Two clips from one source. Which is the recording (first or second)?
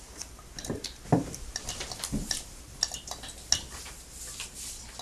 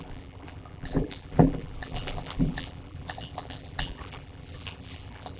first